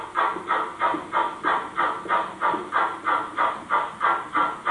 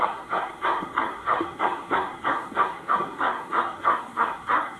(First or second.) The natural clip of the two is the first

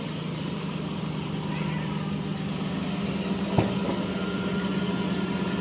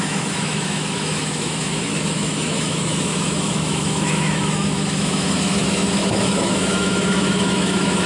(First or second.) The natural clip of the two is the first